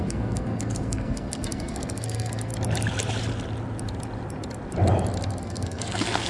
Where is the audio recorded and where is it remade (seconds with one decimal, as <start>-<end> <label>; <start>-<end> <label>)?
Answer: 0.0-2.5 remade; 2.5-5.4 recorded; 5.4-6.3 remade